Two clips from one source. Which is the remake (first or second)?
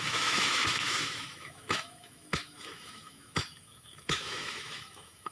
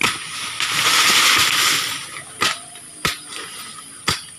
first